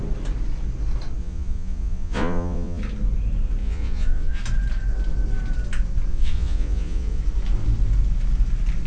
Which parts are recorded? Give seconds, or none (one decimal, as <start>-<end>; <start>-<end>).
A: 0.0-1.2; 2.8-3.6; 4.4-6.1; 7.2-8.9